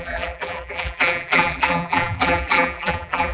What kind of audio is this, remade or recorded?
remade